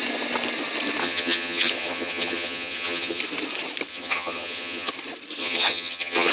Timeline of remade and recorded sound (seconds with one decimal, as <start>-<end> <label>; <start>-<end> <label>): 0.0-1.0 recorded; 1.0-3.2 remade; 3.2-3.9 recorded; 3.9-4.9 remade; 4.9-5.4 recorded; 5.4-6.3 remade